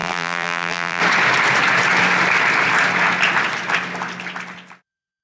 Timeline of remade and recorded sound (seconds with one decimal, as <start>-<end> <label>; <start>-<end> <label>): 0.0-1.0 remade; 1.0-5.2 recorded